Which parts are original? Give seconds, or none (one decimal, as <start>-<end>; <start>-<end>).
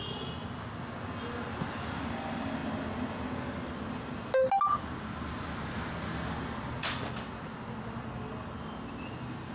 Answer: 0.0-9.5